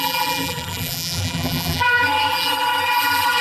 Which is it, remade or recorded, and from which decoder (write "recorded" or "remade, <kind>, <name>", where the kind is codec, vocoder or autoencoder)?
remade, vocoder, BigVGAN v2